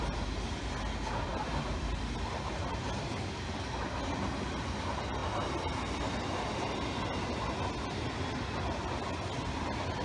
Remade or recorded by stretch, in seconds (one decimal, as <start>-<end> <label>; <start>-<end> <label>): 0.0-10.0 recorded